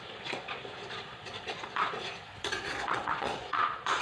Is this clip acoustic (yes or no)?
no